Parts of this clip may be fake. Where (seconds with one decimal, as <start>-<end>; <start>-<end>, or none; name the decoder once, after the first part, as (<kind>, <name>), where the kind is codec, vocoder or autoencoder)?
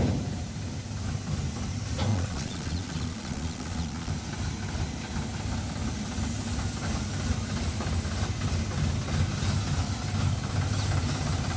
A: 2.1-4.1 (vocoder, Vocos)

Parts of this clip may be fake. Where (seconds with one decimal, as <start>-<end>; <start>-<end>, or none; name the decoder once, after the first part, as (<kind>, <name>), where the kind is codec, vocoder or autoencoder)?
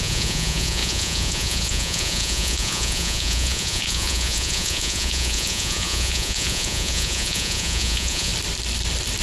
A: 0.0-8.3 (vocoder, Vocos)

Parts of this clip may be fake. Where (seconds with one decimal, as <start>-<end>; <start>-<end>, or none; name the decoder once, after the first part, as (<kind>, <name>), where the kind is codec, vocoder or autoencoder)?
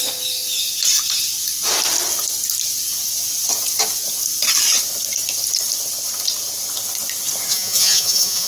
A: 7.5-8.5 (vocoder, Vocos)